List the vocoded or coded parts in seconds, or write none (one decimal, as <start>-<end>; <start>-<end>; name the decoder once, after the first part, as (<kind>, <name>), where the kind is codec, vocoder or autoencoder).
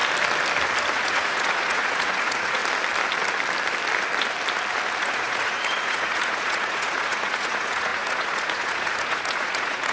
0.9-2.6 (vocoder, Vocos); 5.0-9.9